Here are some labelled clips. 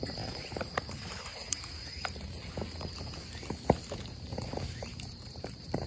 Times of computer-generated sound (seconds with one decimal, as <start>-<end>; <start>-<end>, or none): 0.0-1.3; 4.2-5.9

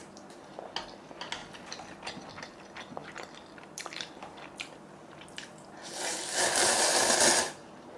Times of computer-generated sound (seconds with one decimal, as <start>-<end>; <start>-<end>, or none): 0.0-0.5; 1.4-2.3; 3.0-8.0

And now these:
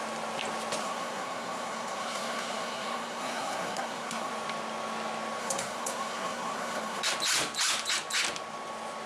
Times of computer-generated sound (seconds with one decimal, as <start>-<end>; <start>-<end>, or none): 0.8-4.3; 5.4-7.0

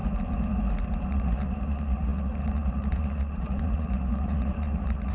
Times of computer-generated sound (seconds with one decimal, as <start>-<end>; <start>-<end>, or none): 1.1-5.1

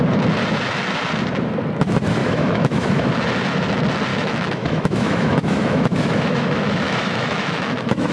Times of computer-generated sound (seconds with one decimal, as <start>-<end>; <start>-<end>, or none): 2.2-3.1; 4.1-8.1